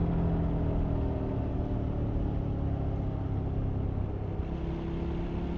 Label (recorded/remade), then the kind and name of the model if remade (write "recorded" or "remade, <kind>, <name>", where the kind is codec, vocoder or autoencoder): recorded